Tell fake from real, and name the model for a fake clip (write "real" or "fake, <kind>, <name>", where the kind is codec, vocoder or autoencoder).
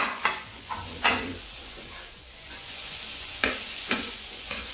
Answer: fake, vocoder, Vocos